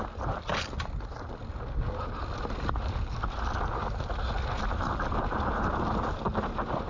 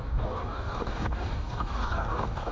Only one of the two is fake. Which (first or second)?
second